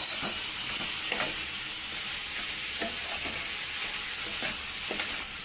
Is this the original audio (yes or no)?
yes